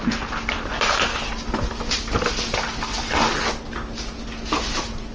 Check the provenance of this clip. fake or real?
real